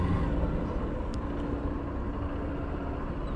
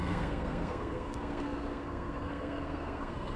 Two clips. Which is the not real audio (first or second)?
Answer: second